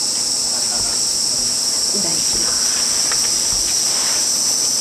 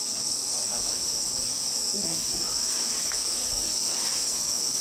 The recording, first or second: first